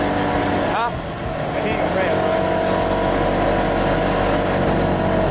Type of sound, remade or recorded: recorded